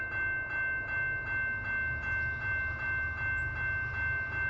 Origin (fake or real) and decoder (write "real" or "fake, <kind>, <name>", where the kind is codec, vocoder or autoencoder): real